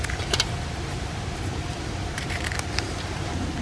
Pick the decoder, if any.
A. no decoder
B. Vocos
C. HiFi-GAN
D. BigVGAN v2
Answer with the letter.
A